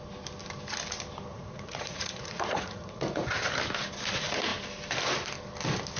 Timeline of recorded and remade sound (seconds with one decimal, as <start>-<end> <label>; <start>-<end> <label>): 0.0-1.3 recorded; 1.3-3.4 remade; 3.4-6.0 recorded